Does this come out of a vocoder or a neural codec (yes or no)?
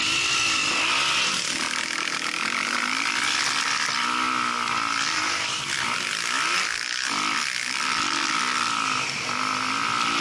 no